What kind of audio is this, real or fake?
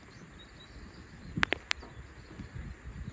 real